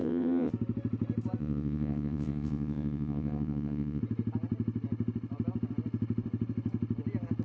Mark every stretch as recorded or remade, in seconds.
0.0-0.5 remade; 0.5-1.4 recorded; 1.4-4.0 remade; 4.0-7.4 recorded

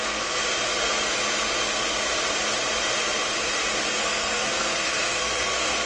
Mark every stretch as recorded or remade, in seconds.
0.0-0.4 remade; 0.4-3.9 recorded; 3.9-5.9 remade

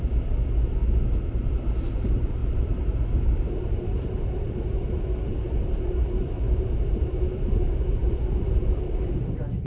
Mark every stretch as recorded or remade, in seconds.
0.0-2.4 recorded; 2.4-7.5 remade; 7.5-8.0 recorded; 8.0-9.1 remade; 9.1-9.7 recorded